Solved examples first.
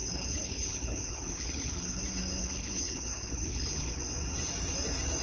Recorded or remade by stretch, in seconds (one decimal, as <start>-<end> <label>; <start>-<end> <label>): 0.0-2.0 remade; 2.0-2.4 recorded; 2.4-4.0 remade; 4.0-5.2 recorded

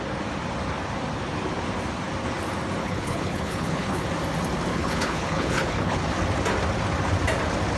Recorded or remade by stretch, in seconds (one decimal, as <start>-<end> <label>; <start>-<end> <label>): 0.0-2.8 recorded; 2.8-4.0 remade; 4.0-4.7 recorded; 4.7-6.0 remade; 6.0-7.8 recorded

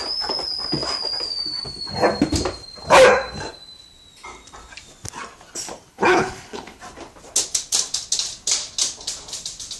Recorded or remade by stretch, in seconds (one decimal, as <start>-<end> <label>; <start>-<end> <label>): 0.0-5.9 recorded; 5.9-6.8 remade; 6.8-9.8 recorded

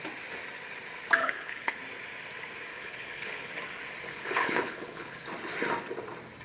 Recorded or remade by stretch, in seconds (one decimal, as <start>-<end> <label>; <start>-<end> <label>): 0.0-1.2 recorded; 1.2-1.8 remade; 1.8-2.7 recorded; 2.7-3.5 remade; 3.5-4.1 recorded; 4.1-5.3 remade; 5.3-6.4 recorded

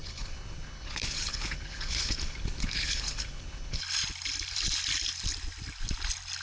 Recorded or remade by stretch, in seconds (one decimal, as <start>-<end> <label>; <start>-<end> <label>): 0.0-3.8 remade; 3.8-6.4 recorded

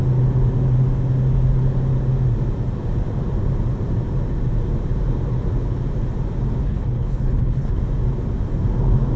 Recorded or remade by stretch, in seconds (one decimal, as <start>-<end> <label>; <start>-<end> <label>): 0.0-6.6 recorded; 6.6-7.8 remade; 7.8-9.2 recorded